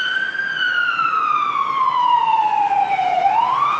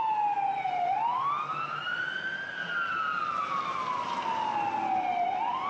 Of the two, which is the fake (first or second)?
first